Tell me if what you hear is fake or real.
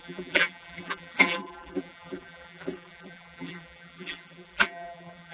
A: fake